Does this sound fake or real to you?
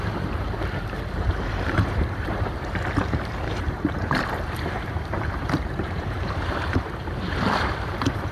fake